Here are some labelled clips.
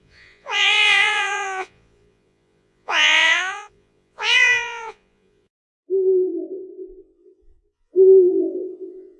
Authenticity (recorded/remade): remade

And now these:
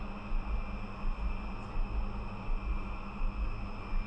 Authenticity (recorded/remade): recorded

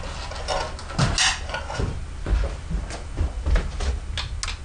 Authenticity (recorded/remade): recorded